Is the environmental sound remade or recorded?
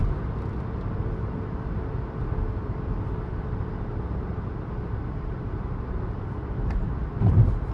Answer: recorded